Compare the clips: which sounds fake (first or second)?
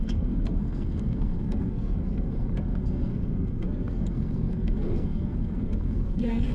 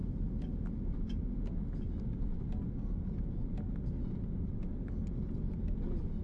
first